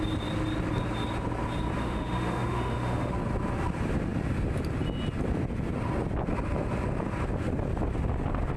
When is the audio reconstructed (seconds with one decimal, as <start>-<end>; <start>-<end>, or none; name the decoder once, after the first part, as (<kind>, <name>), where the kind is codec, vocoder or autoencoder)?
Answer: 1.8-3.1 (autoencoder, DAC-VAE)